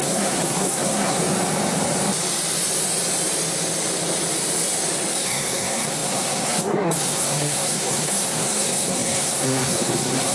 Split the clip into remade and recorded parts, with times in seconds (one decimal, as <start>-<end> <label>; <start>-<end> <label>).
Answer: 0.0-1.2 remade; 1.2-5.1 recorded; 5.1-10.3 remade